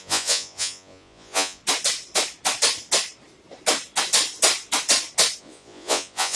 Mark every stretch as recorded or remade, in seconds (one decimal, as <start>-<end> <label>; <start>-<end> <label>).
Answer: 0.0-1.6 remade; 1.6-5.4 recorded; 5.4-6.3 remade